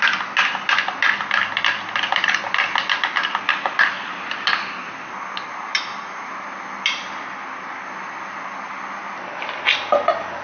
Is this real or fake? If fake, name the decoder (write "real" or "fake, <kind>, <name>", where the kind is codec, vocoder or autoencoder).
real